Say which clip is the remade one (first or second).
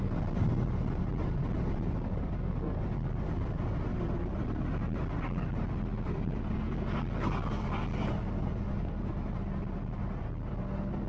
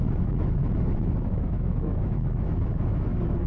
second